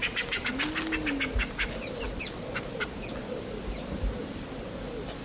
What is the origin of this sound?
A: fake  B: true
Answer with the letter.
B